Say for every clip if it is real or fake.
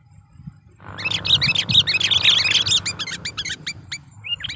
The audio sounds real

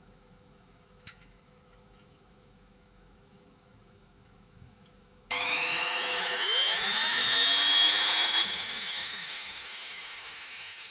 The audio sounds fake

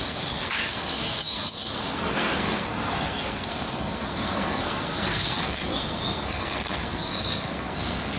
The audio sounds fake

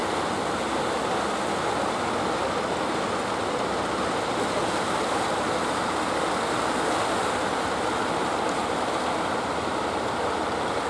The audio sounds real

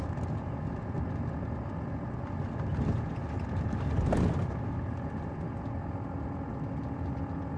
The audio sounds real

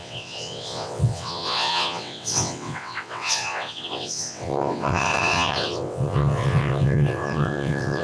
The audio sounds fake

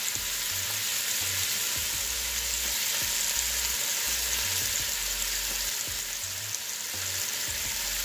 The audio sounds real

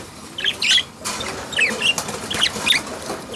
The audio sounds real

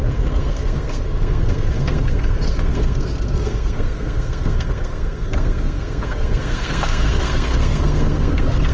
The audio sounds fake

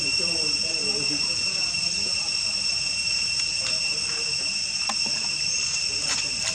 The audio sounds fake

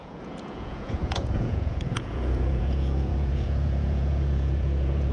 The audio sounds fake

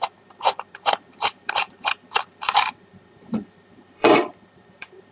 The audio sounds fake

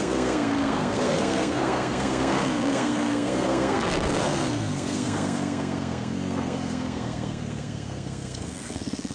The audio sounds fake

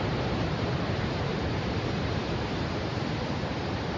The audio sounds real